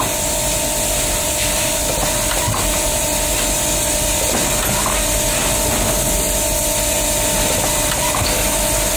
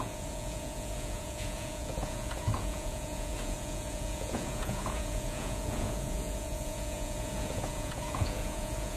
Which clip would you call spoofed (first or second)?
second